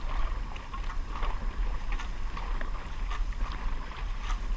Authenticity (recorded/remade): recorded